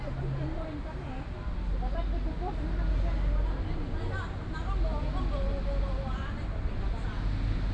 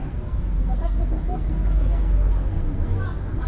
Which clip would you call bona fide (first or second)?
first